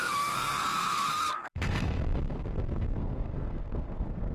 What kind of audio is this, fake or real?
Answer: fake